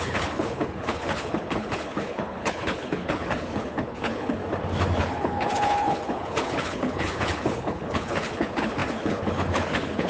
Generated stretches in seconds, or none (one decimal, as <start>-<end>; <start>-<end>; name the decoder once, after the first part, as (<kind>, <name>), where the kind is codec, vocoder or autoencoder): 0.0-4.4 (codec, HILCodec); 5.0-10.1